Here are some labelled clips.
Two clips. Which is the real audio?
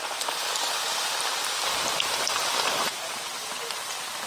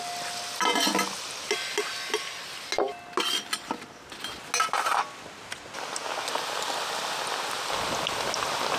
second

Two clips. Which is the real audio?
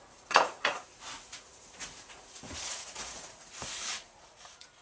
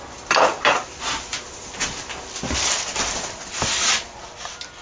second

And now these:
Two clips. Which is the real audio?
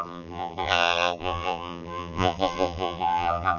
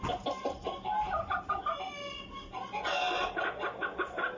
second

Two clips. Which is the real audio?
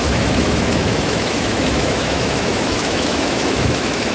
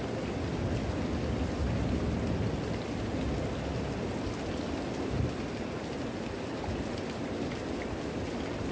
second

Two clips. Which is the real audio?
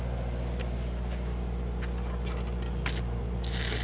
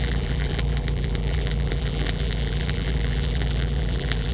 first